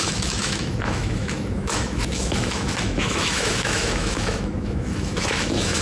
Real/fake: fake